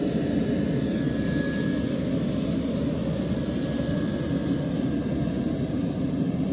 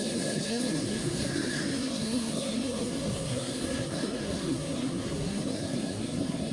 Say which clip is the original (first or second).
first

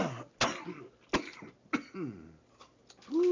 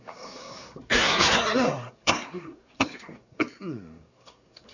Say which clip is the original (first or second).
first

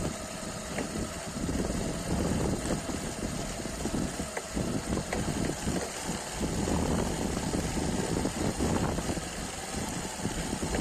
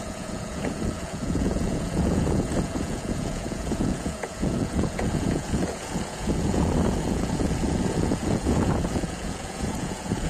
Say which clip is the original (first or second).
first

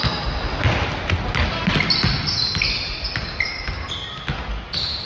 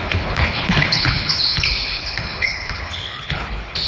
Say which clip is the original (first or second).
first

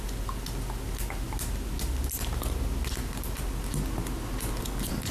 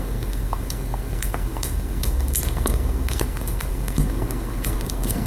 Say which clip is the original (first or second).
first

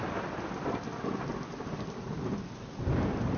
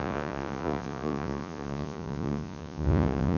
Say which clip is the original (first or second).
first